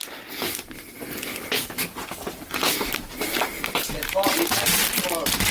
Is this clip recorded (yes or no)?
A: yes